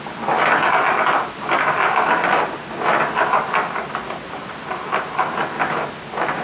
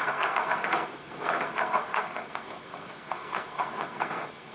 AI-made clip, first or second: second